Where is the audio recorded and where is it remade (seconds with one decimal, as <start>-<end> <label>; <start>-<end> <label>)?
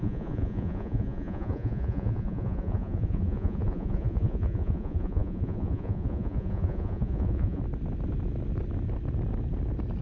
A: 0.0-7.6 remade; 7.6-10.0 recorded